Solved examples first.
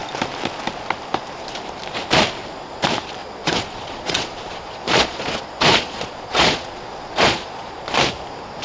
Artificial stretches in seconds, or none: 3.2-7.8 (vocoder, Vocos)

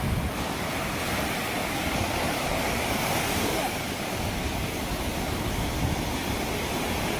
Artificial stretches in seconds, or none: 1.6-5.7 (codec, DAC)

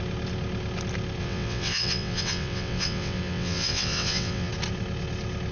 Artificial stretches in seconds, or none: 1.2-4.5 (vocoder, WaveNeXt)

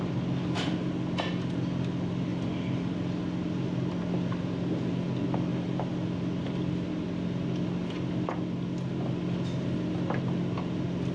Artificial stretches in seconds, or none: none